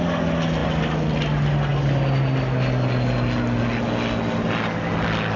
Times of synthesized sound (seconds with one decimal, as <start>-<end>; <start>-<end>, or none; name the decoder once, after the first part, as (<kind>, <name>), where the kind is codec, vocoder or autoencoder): none